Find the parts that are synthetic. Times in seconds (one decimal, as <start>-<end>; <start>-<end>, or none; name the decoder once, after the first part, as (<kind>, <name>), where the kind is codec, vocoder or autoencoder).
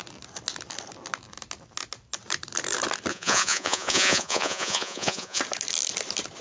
3.1-5.4 (vocoder, Vocos)